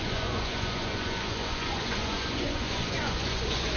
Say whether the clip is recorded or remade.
remade